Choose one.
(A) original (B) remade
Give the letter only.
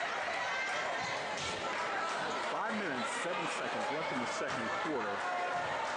A